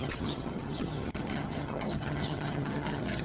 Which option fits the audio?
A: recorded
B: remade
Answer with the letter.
B